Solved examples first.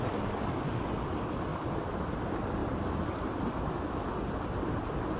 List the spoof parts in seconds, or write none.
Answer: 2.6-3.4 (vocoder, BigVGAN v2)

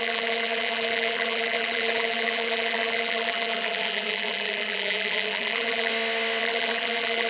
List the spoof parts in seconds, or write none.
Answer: 0.0-5.9 (vocoder, BigVGAN v2); 6.4-7.3